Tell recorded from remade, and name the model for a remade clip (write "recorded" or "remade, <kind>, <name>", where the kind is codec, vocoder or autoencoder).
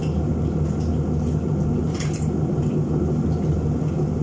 recorded